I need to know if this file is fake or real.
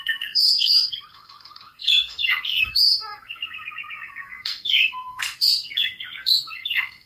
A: fake